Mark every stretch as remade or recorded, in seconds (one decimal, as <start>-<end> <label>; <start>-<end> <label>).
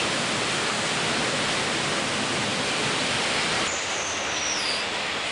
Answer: 0.0-5.3 recorded